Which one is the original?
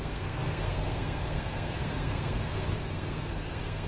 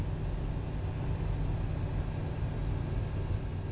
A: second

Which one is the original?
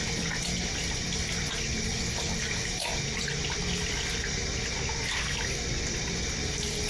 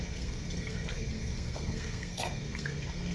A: first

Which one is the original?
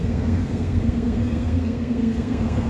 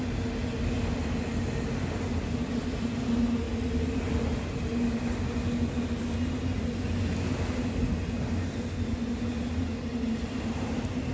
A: second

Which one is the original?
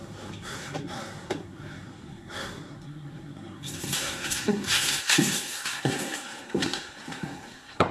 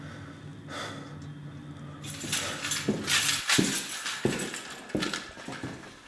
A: second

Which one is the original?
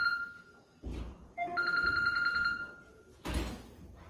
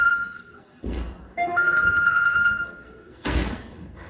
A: first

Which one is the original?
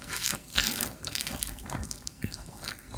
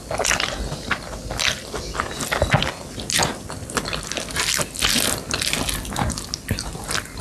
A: second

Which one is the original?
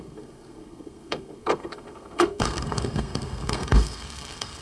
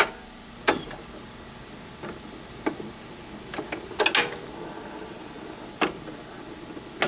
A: second